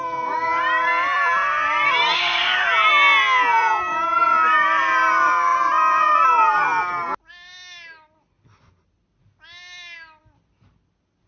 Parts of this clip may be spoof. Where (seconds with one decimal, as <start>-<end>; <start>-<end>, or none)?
none